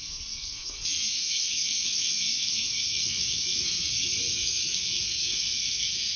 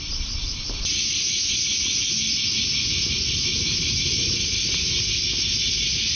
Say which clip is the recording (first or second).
second